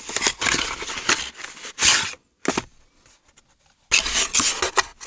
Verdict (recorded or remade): recorded